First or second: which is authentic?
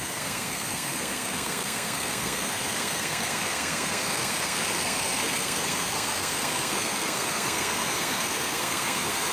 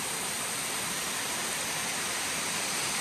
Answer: second